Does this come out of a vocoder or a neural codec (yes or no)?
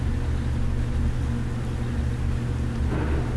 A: no